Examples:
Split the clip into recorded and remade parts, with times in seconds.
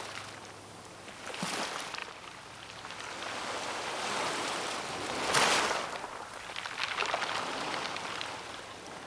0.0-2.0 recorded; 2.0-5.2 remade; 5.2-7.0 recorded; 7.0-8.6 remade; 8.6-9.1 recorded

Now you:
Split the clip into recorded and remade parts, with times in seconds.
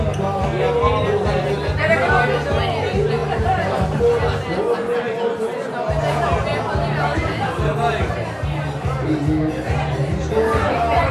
0.0-3.2 recorded; 3.2-4.0 remade; 4.0-11.1 recorded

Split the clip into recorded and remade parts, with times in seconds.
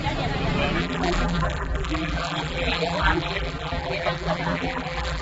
0.0-0.8 recorded; 0.8-5.2 remade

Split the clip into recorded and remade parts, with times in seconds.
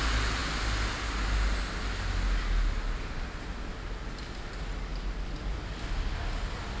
0.0-6.8 recorded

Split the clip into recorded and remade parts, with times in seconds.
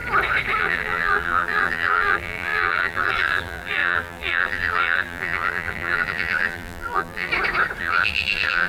0.0-0.6 recorded; 0.6-7.3 remade; 7.3-7.8 recorded; 7.8-8.7 remade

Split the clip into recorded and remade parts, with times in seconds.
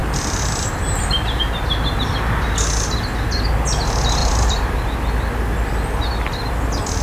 0.0-1.5 remade; 1.5-4.2 recorded; 4.2-4.8 remade; 4.8-7.0 recorded